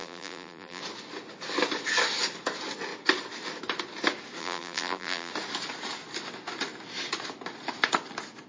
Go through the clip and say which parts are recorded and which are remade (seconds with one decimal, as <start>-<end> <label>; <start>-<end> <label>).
0.0-0.8 remade; 0.8-4.4 recorded; 4.4-5.3 remade; 5.3-8.5 recorded